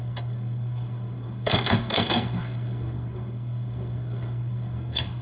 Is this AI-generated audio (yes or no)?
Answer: yes